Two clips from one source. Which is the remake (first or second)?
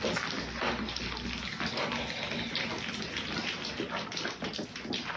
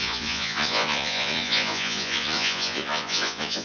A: second